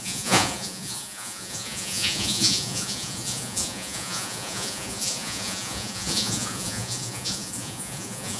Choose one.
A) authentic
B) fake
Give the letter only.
B